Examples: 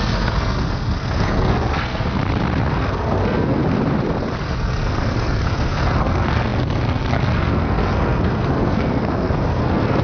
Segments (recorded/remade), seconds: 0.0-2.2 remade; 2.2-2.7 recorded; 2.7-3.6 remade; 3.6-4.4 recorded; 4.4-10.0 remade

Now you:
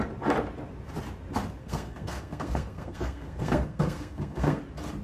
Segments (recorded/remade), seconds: 0.0-1.6 recorded; 1.6-4.6 remade; 4.6-5.0 recorded

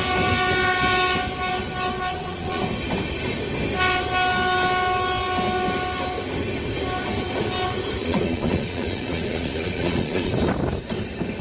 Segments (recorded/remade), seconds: 0.0-2.1 recorded; 2.1-2.6 remade; 2.6-8.0 recorded; 8.0-10.3 remade; 10.3-11.4 recorded

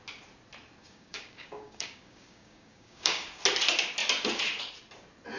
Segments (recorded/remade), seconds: 0.0-0.8 recorded; 0.8-3.4 remade; 3.4-5.4 recorded

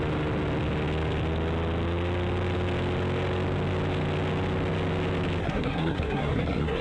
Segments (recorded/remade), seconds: 0.0-5.4 recorded; 5.4-6.8 remade

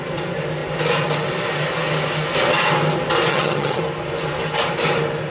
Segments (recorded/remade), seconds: 0.0-3.3 recorded; 3.3-3.8 remade; 3.8-5.3 recorded

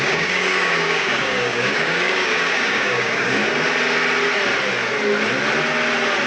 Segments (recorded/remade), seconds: 0.0-3.4 remade; 3.4-6.3 recorded

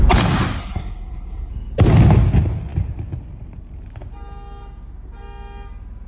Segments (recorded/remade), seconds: 0.0-0.6 recorded; 0.6-1.5 remade; 1.5-6.1 recorded